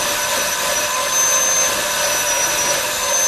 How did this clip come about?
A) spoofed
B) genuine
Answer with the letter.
B